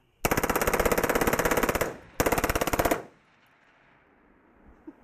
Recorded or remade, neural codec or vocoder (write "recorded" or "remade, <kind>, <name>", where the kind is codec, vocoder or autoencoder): recorded